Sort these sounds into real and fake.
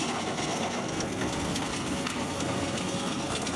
fake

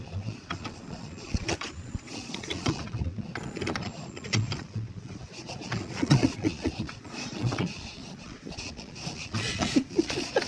fake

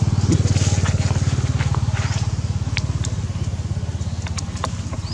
real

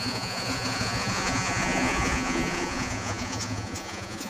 fake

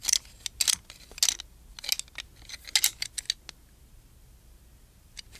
real